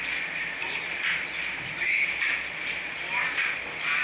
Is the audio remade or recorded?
recorded